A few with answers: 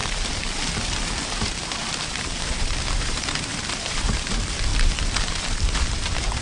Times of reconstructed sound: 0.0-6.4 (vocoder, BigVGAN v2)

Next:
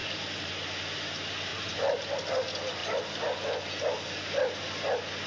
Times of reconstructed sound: 0.0-0.5 (vocoder, BigVGAN v2); 1.5-2.1

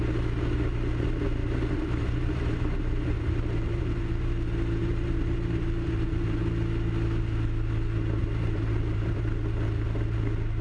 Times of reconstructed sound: 1.4-4.3 (vocoder, BigVGAN v2); 4.8-6.4; 8.2-9.2

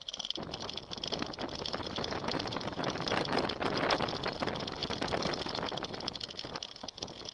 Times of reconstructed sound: 1.8-3.5 (vocoder, BigVGAN v2)

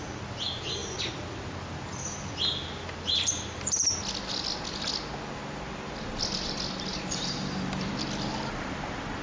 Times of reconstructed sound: 6.9-7.9 (vocoder, BigVGAN v2)

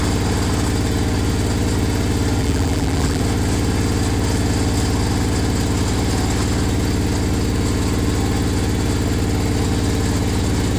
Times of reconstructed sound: 2.4-3.2 (vocoder, BigVGAN v2)

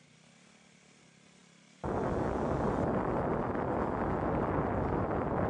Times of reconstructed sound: none